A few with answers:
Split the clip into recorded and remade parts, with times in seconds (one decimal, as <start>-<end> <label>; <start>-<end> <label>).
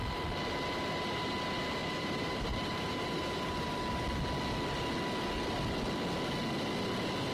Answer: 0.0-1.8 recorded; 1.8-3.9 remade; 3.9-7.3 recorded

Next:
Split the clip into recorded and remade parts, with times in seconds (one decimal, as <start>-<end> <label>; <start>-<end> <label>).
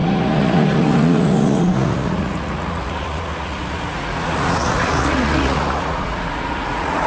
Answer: 0.0-7.1 remade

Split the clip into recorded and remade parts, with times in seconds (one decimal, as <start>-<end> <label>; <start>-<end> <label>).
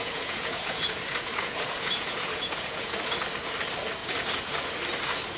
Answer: 0.0-3.2 remade; 3.2-4.0 recorded; 4.0-4.7 remade; 4.7-5.4 recorded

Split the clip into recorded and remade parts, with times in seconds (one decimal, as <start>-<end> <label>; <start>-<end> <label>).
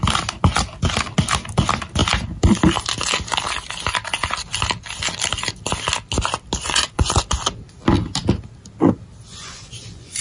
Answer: 0.0-6.6 recorded; 6.6-7.2 remade; 7.2-9.3 recorded; 9.3-10.2 remade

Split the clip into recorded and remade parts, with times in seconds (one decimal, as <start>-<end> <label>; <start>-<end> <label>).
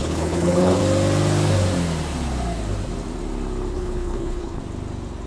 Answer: 0.0-0.8 remade; 0.8-3.7 recorded; 3.7-4.6 remade; 4.6-5.3 recorded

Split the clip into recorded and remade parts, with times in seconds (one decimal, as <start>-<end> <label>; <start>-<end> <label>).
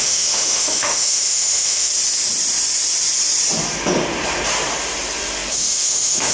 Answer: 0.0-1.9 remade; 1.9-5.5 recorded; 5.5-6.3 remade